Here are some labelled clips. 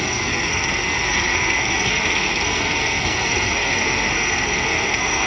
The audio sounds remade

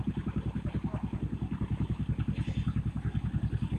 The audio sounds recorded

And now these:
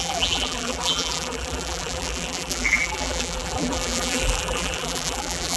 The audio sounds remade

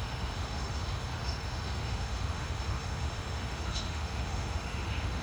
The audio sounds remade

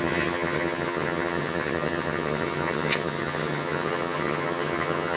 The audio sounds remade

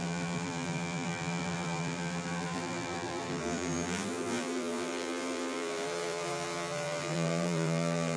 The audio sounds remade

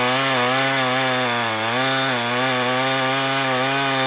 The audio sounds recorded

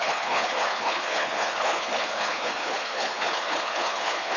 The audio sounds remade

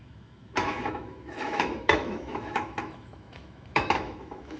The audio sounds remade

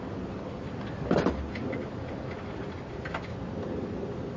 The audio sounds recorded